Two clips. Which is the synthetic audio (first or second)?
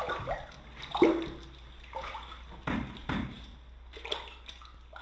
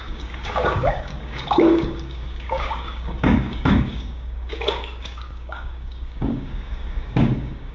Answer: second